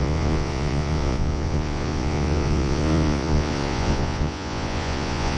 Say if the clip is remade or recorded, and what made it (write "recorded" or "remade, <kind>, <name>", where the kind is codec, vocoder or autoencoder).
remade, vocoder, Vocos